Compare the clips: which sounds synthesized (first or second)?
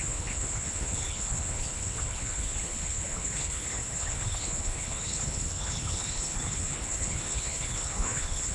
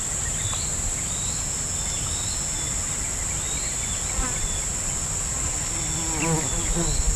first